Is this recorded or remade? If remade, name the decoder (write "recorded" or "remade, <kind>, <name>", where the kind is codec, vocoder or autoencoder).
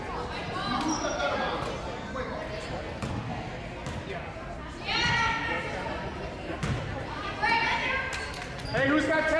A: recorded